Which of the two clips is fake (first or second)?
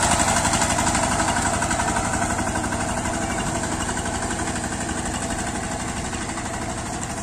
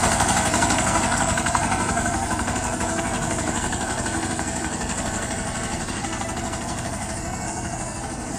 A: second